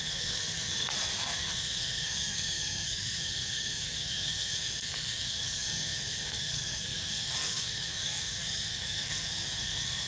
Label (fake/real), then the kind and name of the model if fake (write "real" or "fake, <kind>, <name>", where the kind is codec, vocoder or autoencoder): fake, codec, SNAC